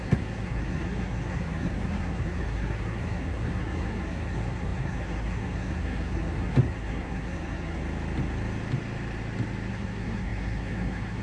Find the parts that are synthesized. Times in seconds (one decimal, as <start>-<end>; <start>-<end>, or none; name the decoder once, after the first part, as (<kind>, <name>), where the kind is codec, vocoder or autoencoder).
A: 0.0-7.8 (codec, SNAC); 9.7-11.2